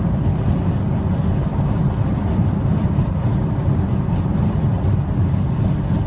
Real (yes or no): yes